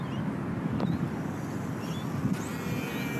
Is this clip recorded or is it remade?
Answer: recorded